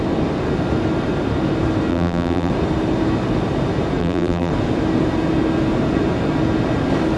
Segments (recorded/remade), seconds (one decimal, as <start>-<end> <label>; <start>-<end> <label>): 0.0-1.9 recorded; 1.9-2.5 remade; 2.5-4.0 recorded; 4.0-4.5 remade; 4.5-7.2 recorded